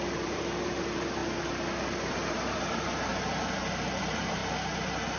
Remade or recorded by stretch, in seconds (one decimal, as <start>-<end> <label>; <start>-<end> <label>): 0.0-1.2 remade; 1.2-2.1 recorded; 2.1-3.1 remade; 3.1-4.0 recorded; 4.0-4.4 remade; 4.4-5.2 recorded